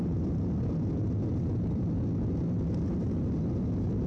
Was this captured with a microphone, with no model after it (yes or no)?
yes